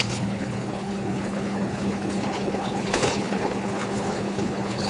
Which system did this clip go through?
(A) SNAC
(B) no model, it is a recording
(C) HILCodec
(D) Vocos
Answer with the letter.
C